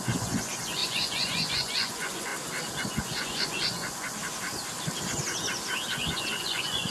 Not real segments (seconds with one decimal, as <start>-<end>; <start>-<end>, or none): 0.0-2.3; 2.9-4.2; 5.9-6.9